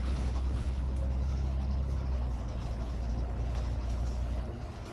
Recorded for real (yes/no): no